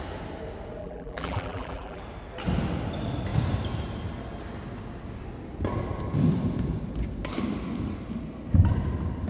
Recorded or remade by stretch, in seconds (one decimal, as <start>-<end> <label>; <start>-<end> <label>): 0.0-0.8 recorded; 0.8-2.0 remade; 2.0-9.3 recorded